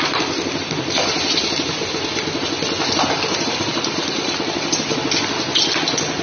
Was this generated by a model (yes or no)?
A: no